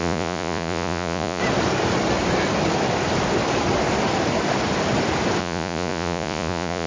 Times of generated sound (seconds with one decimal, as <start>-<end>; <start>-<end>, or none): 0.0-1.4; 5.4-6.9